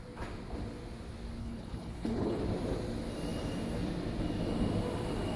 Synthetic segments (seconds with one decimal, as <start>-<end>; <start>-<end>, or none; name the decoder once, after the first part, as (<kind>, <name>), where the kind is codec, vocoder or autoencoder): 1.4-2.4 (codec, HILCodec)